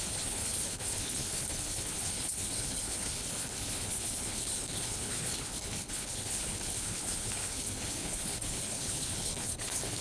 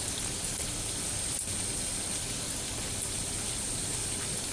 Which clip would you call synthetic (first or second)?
first